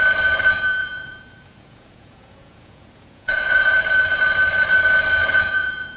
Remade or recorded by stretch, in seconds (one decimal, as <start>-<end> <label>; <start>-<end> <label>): 0.0-0.8 recorded; 0.8-3.9 remade; 3.9-5.2 recorded; 5.2-6.0 remade